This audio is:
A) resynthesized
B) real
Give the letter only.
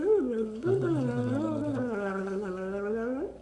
A